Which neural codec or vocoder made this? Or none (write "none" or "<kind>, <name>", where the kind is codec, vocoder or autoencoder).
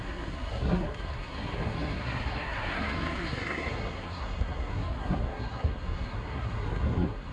codec, SNAC